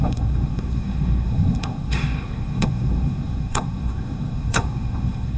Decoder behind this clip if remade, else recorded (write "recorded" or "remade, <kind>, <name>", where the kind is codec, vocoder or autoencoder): remade, codec, SNAC